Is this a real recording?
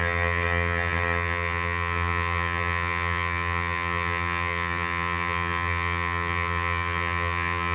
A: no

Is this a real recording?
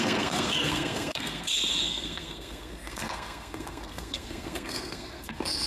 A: no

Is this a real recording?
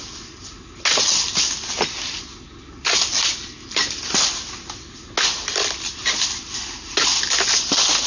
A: yes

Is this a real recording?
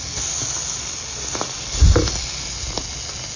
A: yes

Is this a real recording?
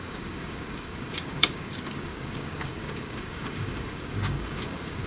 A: no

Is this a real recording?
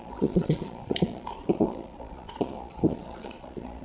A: no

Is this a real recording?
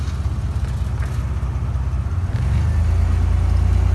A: yes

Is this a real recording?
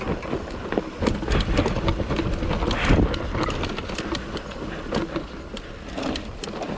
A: yes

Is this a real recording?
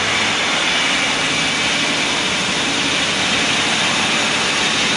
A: yes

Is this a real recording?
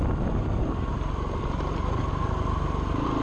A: yes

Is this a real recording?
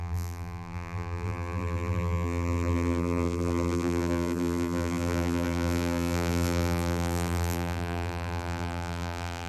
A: no